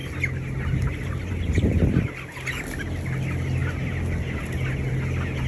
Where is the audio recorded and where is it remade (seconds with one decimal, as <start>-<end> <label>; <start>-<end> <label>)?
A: 0.0-5.5 recorded

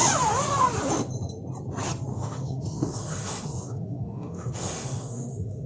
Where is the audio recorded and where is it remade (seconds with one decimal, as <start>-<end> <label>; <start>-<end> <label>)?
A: 0.0-2.1 recorded; 2.1-5.7 remade